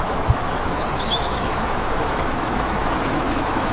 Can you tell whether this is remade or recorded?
remade